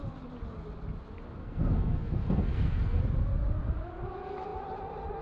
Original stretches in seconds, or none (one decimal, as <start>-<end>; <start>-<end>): 0.0-1.4; 3.0-5.2